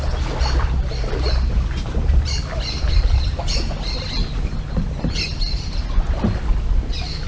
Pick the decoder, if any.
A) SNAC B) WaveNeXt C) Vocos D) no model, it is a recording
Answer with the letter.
D